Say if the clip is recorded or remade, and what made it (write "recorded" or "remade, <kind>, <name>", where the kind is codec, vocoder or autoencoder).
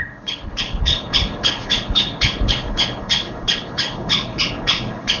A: remade, codec, HILCodec